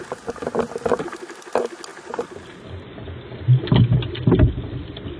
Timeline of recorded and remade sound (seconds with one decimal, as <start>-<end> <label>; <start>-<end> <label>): 0.0-5.2 recorded